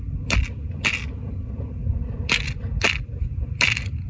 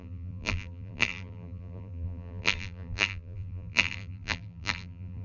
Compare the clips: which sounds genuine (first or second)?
first